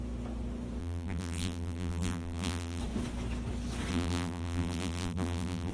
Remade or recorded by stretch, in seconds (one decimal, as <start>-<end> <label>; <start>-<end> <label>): 0.0-0.8 recorded; 0.8-2.8 remade; 2.8-3.9 recorded; 3.9-5.7 remade